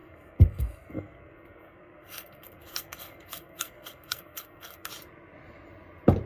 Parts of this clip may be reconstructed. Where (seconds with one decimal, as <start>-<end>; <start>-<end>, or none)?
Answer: 0.0-4.9